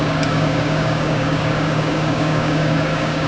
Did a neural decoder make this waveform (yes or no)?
yes